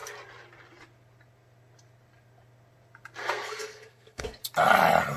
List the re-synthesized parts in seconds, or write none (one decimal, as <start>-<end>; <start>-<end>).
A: 3.2-4.4